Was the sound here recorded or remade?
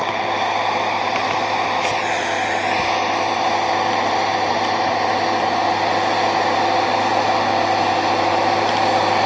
recorded